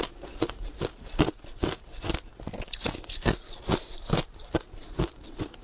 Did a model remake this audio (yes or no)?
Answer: no